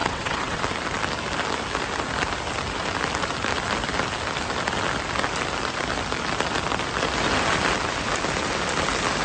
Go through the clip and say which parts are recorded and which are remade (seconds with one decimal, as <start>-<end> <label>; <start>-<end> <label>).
0.0-0.6 remade; 0.6-9.2 recorded